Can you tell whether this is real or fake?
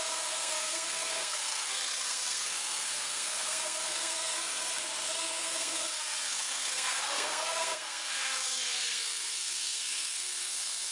fake